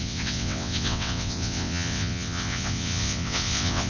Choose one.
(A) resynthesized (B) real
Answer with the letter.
A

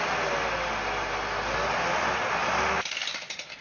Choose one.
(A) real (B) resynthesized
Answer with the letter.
A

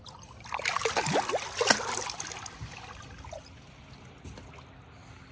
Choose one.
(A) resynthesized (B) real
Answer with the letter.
B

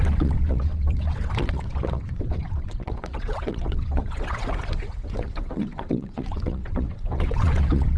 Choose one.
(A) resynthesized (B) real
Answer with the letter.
A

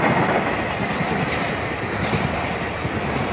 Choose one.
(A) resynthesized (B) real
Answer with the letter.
B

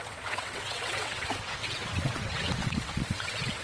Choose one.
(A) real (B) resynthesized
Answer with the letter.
B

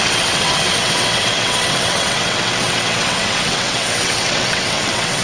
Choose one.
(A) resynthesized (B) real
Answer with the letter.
A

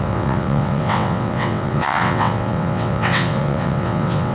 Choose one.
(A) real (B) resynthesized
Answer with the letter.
B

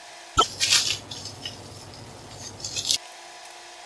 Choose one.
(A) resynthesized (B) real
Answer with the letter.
B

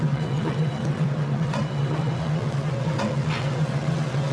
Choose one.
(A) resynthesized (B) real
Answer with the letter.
A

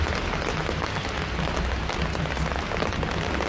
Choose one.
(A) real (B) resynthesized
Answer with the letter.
A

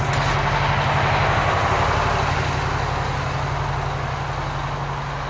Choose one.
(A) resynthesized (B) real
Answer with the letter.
B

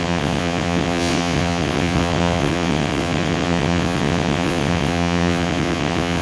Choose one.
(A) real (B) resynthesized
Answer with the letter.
B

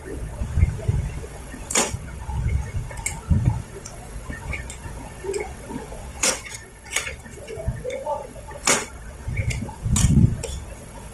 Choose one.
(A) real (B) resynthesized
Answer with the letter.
B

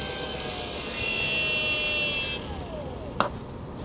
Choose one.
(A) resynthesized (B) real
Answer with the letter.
B